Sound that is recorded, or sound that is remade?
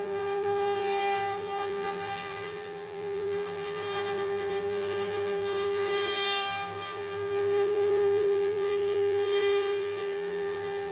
remade